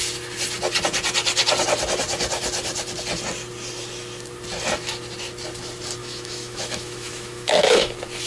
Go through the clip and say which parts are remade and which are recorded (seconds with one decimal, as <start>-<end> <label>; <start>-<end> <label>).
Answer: 0.0-6.0 recorded; 6.0-7.9 remade; 7.9-8.3 recorded